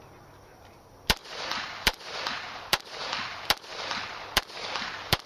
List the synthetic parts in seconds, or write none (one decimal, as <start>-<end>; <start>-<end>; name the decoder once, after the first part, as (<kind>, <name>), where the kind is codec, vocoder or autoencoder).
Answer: 1.2-2.3 (vocoder, BigVGAN v2)